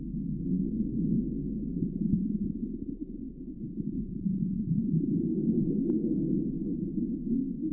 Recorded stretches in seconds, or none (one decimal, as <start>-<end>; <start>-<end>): 0.0-1.8; 3.2-3.7; 5.2-7.7